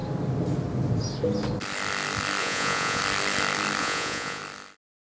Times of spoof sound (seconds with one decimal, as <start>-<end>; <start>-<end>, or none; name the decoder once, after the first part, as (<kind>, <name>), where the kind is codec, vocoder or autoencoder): 2.4-3.0 (vocoder, Vocos); 3.8-4.4